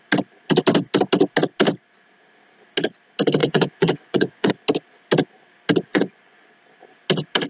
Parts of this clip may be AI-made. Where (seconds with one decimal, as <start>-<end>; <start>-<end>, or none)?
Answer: 3.4-4.5; 5.9-6.5